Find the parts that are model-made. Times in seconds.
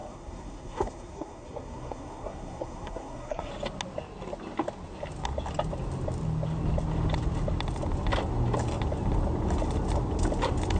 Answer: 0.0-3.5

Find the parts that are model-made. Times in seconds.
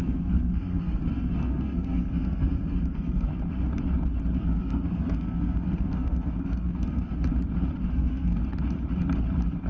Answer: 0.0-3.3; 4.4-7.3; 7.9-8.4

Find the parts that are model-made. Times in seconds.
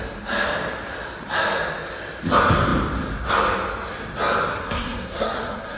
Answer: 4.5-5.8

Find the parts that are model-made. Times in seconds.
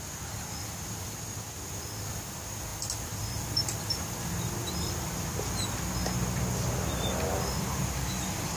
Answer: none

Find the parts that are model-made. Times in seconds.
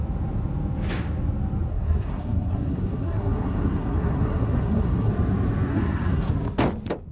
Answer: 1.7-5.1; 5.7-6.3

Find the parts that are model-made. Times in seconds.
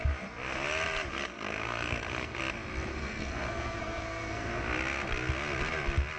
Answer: 1.1-2.4; 2.9-4.6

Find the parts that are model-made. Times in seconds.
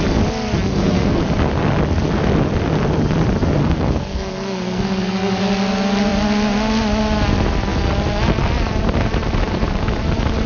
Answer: 0.7-1.2; 3.6-5.4